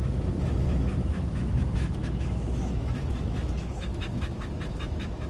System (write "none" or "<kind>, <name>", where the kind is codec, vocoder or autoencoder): autoencoder, DAC-VAE